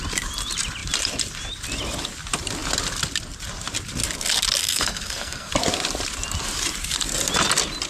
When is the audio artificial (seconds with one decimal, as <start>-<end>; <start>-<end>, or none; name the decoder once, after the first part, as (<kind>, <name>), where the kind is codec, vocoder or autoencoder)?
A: 4.6-5.5 (codec, SNAC)